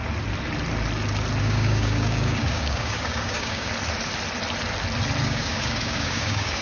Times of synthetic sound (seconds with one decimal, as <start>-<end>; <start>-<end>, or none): 1.4-3.7; 5.2-6.6